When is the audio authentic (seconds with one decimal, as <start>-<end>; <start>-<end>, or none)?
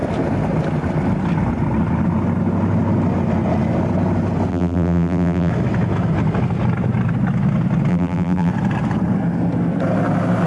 0.0-4.5; 5.5-7.9; 8.5-10.5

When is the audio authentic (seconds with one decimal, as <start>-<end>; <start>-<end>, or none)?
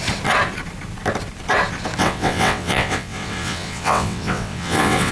0.0-2.0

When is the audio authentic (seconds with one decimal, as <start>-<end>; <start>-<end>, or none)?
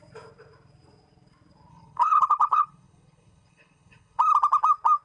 0.0-1.7; 4.2-5.0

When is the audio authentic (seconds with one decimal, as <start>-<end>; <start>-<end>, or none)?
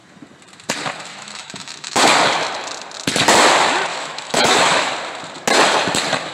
0.0-1.1; 2.0-3.9; 4.9-6.3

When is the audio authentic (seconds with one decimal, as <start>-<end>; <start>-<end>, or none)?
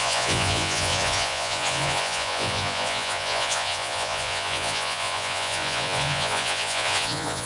none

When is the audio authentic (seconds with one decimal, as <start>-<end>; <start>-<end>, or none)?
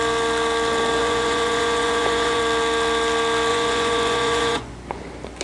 0.0-1.0; 2.4-3.5; 5.0-5.4